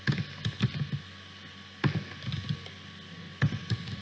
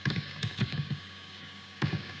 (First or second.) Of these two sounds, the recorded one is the first